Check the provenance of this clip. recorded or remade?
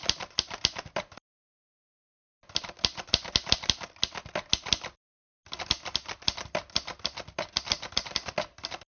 recorded